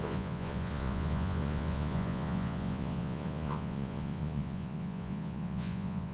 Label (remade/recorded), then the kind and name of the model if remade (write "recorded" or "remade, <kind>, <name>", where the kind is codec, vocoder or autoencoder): remade, vocoder, Vocos